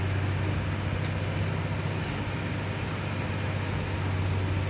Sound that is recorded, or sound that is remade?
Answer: recorded